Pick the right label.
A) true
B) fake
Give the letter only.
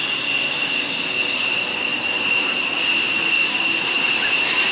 A